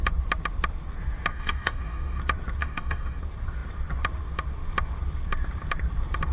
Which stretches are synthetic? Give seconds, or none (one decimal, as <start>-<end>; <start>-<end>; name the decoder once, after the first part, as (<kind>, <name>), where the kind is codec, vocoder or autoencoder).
1.3-2.2 (codec, DAC); 2.6-3.2